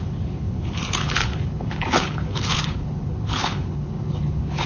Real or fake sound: fake